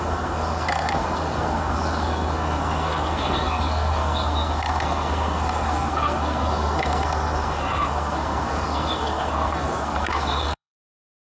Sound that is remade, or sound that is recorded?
remade